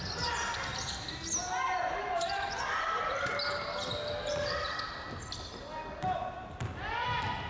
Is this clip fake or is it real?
real